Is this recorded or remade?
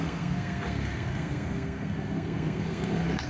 remade